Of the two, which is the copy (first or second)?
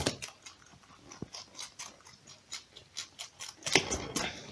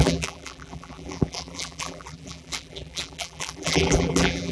second